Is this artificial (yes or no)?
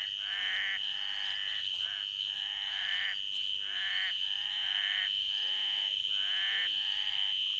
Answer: no